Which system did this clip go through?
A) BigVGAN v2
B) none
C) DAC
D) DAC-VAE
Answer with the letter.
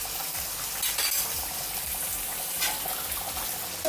B